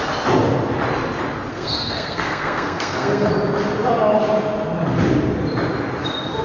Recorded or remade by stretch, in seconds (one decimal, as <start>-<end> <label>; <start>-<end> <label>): 0.0-1.5 recorded; 1.5-3.3 remade; 3.3-6.4 recorded